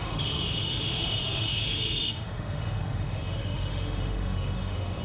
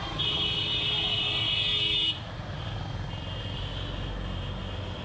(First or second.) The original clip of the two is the second